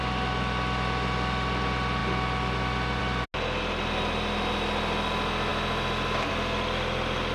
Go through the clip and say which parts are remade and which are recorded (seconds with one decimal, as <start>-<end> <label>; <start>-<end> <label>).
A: 0.0-7.3 recorded